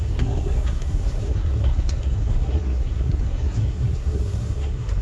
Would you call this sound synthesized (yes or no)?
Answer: yes